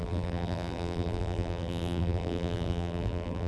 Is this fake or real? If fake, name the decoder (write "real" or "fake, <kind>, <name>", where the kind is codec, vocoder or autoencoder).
fake, vocoder, BigVGAN v2